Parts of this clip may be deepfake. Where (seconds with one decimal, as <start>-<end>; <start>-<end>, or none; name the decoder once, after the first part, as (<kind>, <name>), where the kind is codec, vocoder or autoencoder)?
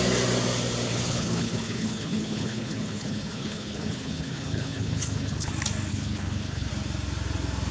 0.9-5.5 (codec, HILCodec); 5.9-6.7